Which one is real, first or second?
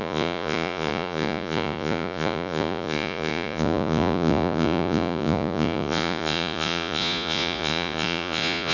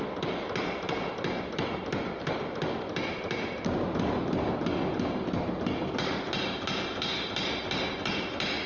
second